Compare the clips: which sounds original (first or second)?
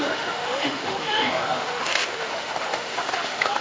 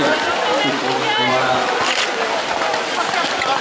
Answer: second